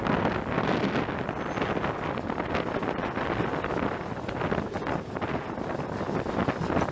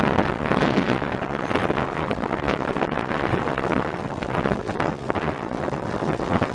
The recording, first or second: first